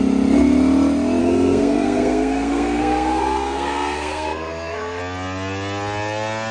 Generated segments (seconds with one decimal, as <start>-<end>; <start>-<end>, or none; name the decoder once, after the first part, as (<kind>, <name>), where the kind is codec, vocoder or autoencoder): 1.2-5.0 (codec, SNAC)